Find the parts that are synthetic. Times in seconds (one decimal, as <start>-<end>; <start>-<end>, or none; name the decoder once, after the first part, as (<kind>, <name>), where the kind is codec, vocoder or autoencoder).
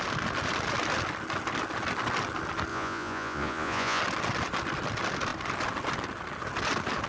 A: 2.7-4.0 (vocoder, Vocos)